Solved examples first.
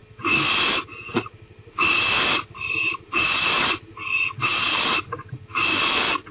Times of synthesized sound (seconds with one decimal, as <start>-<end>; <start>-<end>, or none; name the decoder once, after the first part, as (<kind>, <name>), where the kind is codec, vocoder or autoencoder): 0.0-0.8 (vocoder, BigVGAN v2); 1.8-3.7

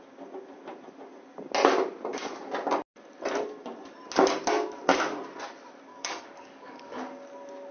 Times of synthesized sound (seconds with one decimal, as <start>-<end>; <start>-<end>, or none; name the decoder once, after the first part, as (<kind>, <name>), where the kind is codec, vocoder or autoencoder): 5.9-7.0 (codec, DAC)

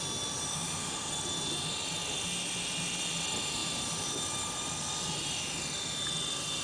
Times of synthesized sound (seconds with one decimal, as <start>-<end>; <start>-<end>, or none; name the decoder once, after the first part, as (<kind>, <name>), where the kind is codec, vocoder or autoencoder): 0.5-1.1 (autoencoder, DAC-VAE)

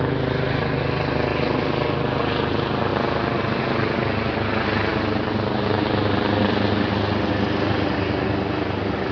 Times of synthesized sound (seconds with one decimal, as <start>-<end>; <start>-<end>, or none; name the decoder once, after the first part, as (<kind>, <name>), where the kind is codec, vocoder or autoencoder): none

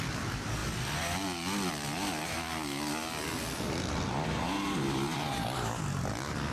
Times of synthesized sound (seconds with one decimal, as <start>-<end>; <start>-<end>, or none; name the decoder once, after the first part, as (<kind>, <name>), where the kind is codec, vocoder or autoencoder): none